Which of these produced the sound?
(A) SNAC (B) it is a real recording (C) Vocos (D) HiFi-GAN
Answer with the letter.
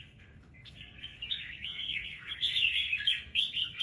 A